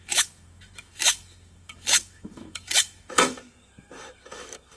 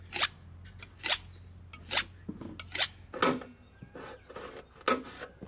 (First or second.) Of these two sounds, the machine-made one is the first